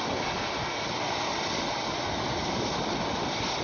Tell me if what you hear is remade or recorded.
remade